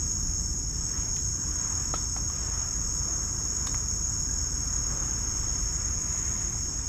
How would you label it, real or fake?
real